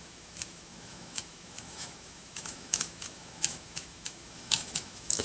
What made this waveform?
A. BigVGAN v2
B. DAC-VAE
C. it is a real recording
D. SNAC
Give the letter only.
B